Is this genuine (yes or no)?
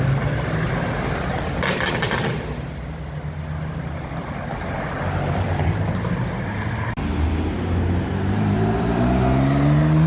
yes